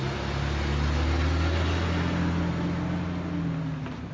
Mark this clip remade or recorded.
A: recorded